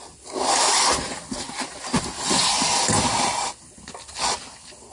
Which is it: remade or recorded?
recorded